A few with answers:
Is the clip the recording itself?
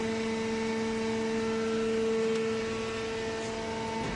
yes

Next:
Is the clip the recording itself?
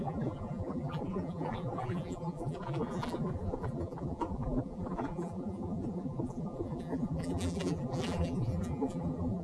no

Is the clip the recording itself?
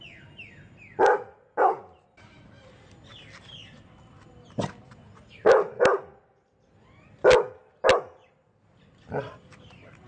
yes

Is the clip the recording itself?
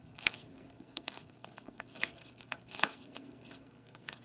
no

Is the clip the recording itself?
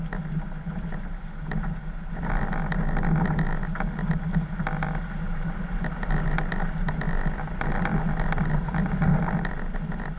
yes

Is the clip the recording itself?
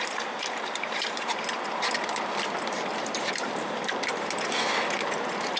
no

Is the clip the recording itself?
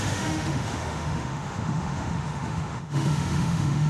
no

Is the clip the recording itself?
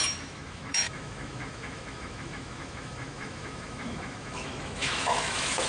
no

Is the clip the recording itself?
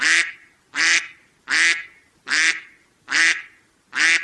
yes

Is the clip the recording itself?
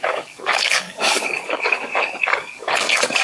no